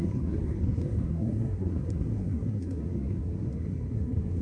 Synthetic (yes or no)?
yes